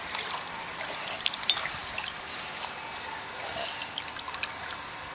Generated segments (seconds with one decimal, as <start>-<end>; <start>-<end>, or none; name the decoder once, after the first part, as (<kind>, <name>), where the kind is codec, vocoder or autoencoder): none

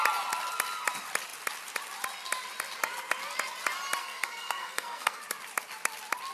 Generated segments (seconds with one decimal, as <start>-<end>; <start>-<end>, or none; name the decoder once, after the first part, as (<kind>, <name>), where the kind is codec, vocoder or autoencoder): 4.0-5.2 (codec, SNAC)

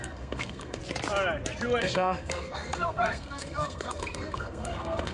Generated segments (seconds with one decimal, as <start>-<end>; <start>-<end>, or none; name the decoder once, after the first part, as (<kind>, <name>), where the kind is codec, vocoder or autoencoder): 0.0-0.8 (codec, SNAC); 1.8-5.1

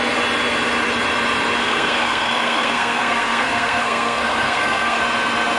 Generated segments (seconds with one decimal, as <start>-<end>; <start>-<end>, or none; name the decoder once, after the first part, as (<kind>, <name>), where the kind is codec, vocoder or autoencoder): 1.6-5.0 (codec, SNAC)